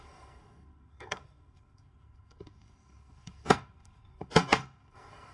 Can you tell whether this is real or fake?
fake